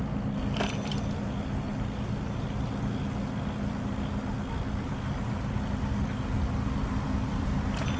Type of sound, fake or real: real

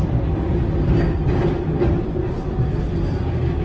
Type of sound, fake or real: real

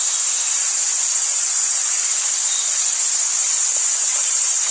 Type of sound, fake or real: real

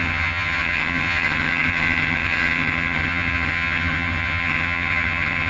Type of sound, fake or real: fake